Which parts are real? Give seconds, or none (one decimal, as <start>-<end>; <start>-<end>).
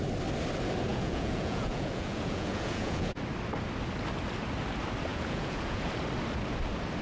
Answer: 0.0-0.9; 3.2-5.1; 5.9-7.0